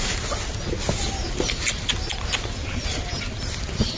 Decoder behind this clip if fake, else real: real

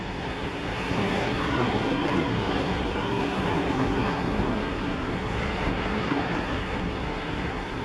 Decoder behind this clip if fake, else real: fake, codec, SNAC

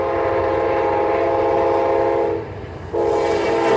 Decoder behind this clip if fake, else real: real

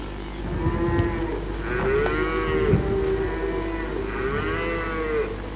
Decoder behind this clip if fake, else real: real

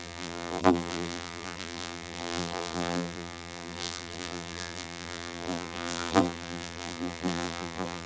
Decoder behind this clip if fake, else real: fake, vocoder, BigVGAN v2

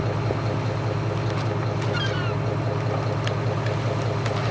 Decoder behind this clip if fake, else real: real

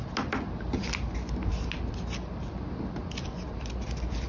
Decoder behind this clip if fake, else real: real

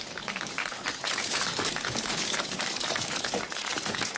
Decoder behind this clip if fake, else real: fake, codec, DAC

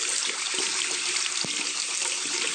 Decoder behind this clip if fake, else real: real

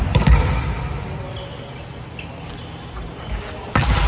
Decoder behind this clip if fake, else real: real